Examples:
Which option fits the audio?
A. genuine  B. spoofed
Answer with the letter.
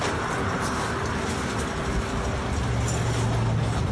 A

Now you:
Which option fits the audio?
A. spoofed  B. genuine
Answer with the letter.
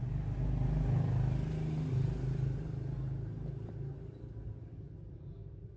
B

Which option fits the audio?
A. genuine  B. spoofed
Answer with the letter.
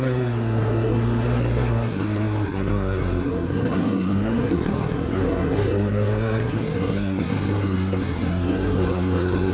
B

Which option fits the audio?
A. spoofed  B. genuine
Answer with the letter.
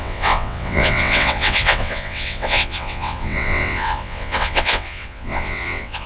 A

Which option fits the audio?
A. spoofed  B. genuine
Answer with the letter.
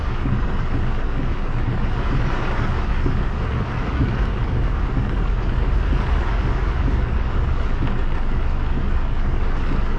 A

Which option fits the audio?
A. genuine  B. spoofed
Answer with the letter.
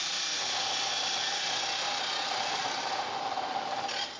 A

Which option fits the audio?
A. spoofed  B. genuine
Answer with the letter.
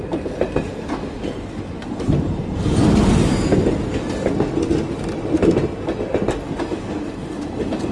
B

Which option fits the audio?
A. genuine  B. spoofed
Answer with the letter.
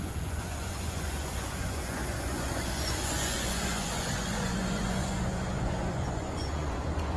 B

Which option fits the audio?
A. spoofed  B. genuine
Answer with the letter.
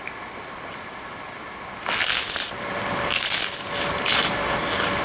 B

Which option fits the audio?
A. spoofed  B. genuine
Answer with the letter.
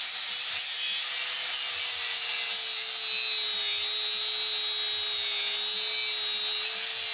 B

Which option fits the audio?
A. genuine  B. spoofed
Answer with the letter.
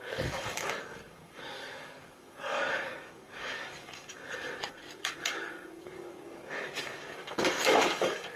B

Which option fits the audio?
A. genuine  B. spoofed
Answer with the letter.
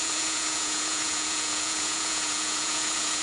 B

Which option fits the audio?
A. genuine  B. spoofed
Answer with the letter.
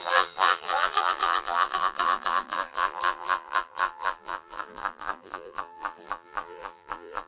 B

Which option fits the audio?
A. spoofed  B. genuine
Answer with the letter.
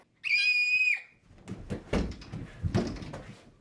B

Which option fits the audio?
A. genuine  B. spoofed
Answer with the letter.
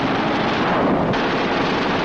A